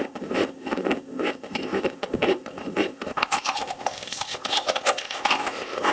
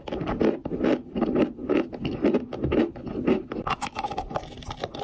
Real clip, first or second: second